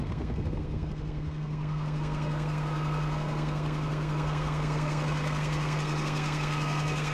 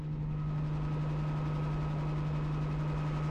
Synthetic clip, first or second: first